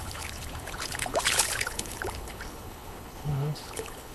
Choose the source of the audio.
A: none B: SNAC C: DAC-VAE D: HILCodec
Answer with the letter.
D